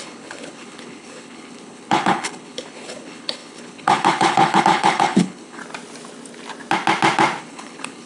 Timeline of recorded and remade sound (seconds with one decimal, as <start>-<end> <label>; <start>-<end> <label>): 0.0-5.6 remade; 5.6-7.4 recorded; 7.4-8.1 remade